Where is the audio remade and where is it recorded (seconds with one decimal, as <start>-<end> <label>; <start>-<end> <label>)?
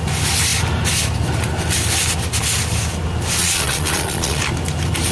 0.0-3.4 recorded; 3.4-4.4 remade; 4.4-5.1 recorded